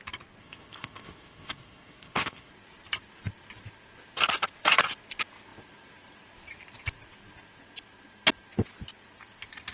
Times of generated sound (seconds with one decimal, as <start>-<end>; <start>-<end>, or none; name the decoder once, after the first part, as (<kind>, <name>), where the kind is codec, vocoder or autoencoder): 0.4-2.5 (codec, ZipCodec)